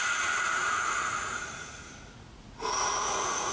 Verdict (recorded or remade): remade